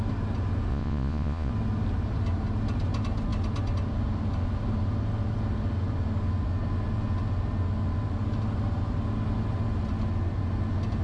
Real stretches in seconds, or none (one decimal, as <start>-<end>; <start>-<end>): 0.0-0.7; 1.5-11.0